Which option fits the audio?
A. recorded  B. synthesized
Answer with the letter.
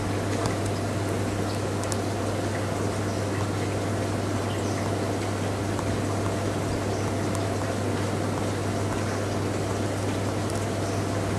A